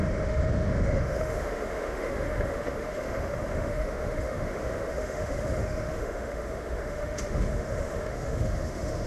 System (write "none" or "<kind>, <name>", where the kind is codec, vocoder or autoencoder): autoencoder, DAC-VAE